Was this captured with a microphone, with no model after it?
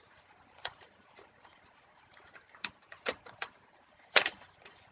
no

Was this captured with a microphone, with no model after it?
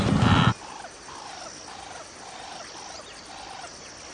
yes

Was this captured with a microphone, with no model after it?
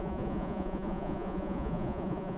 no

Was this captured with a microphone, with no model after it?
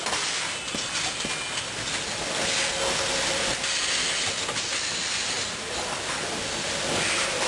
yes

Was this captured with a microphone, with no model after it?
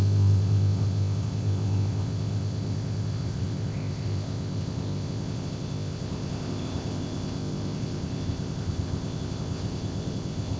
no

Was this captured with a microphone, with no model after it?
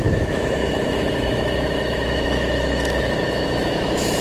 no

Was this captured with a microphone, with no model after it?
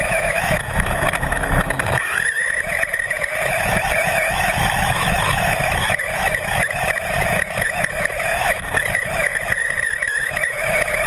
no